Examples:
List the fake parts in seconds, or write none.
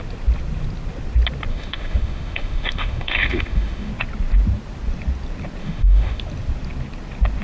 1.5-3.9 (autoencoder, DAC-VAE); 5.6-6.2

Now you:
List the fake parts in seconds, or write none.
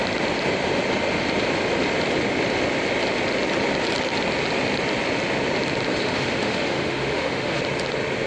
5.9-7.6 (autoencoder, DAC-VAE)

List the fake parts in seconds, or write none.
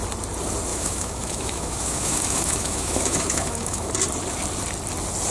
0.7-3.9 (autoencoder, DAC-VAE)